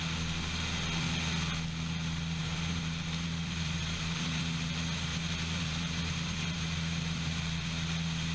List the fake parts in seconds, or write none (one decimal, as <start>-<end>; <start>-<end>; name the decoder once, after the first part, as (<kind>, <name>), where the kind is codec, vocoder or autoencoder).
2.4-4.4 (vocoder, BigVGAN v2); 5.1-7.3